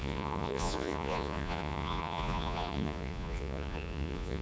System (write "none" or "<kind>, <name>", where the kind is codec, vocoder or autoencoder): vocoder, Vocos